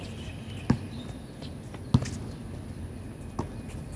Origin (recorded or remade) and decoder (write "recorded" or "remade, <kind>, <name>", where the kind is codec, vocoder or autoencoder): recorded